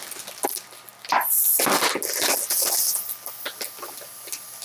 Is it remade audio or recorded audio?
recorded